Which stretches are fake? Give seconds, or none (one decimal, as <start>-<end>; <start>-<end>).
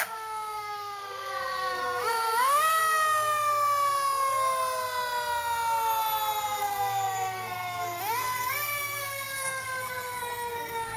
0.0-2.8; 6.6-11.0